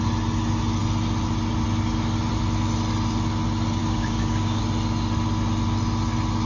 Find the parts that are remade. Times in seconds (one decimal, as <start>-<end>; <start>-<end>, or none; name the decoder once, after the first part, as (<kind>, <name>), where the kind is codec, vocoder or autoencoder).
3.8-4.6 (codec, DAC)